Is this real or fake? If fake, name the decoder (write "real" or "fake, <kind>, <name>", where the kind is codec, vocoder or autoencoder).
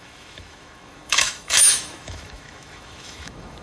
fake, autoencoder, DAC-VAE